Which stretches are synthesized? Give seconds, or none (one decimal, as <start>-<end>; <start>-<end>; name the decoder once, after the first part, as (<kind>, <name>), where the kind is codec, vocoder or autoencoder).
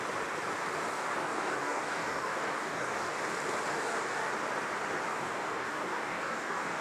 0.9-3.2 (codec, DAC); 3.7-4.3; 5.1-6.8